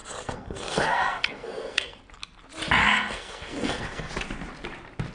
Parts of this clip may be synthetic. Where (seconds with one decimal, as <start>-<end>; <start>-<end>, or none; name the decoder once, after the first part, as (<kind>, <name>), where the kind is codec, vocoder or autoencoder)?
0.0-2.0 (codec, SNAC); 2.8-4.1